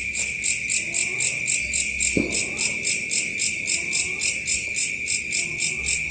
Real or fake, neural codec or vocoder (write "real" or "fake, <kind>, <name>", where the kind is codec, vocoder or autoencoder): real